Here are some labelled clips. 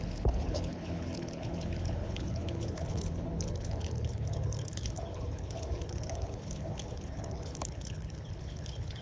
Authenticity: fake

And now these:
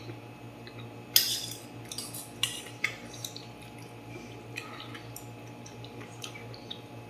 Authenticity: real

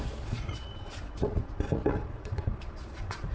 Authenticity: fake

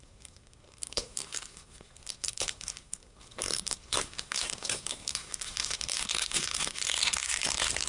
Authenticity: fake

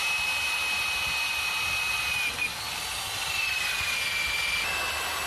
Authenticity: real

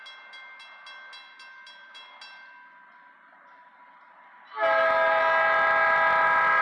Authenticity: real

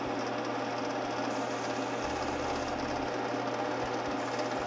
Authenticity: real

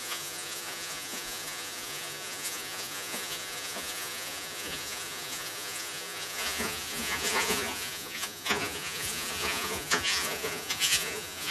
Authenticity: fake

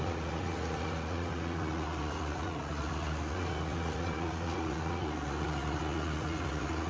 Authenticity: fake